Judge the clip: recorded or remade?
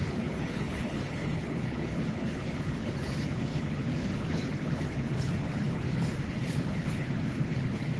remade